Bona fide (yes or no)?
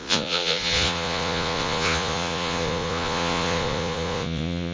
no